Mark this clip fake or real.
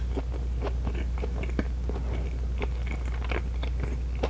real